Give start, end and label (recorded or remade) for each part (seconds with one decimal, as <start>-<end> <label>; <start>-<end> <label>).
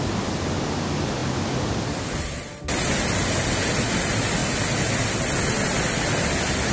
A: 0.0-6.7 recorded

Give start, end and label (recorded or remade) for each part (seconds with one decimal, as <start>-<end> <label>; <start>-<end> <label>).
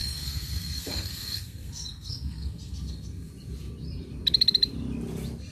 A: 0.0-3.3 remade; 3.3-5.5 recorded